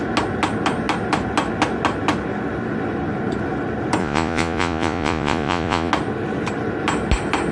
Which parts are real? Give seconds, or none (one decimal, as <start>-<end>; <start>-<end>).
0.0-4.0; 5.9-7.5